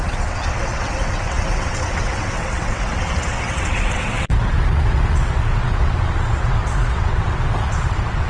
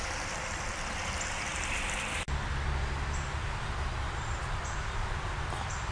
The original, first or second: second